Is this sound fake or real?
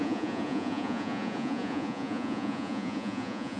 fake